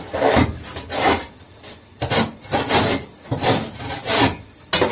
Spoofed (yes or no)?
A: no